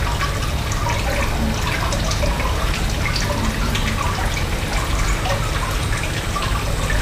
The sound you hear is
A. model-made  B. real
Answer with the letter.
B